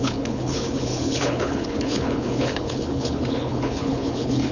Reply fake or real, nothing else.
fake